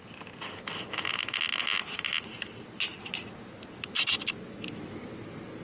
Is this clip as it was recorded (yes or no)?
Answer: yes